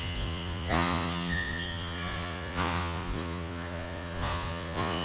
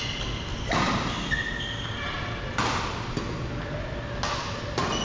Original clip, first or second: second